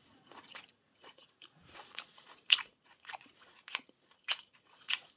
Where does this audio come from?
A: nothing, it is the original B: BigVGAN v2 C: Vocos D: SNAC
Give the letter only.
C